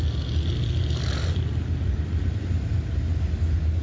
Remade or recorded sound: recorded